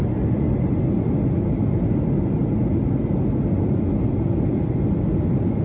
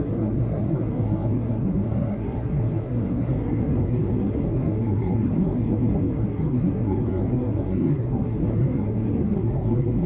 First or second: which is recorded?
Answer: first